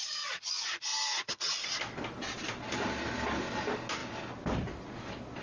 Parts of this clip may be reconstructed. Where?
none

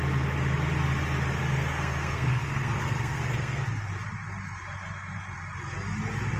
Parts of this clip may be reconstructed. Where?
1.4-3.6 (codec, SNAC)